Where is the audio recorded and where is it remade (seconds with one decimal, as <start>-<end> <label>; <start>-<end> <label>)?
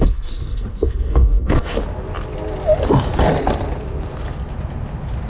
0.0-1.8 remade; 1.8-5.3 recorded